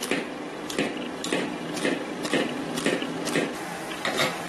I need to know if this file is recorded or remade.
recorded